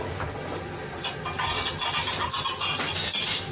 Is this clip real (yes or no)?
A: yes